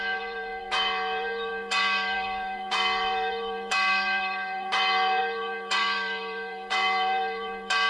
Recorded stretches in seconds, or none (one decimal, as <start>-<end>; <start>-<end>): none